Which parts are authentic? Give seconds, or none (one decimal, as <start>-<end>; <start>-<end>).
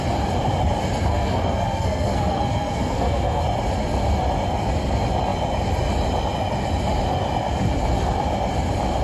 0.0-1.1; 3.4-9.0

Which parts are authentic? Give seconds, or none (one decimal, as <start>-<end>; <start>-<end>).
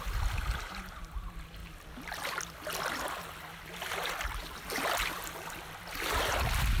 0.0-6.8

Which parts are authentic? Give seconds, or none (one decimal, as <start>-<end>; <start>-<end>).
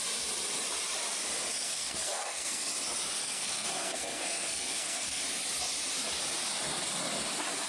0.0-1.5; 2.7-3.2; 5.2-7.7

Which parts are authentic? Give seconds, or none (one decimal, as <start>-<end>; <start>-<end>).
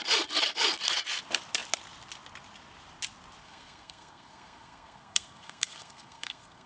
0.0-3.4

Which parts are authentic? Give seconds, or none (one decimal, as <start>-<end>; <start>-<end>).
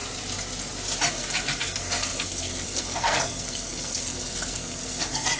0.0-1.1